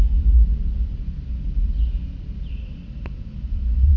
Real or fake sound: real